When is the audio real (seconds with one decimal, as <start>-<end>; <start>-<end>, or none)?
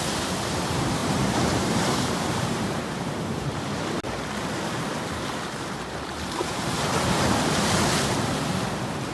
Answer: 0.0-1.0; 3.8-6.4; 6.9-9.1